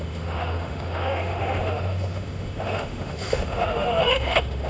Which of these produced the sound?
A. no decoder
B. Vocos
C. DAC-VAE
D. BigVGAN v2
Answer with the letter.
C